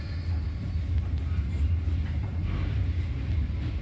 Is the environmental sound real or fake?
real